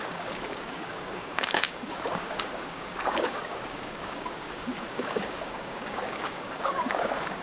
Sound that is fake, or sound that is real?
fake